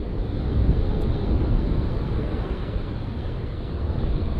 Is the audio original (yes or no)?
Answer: no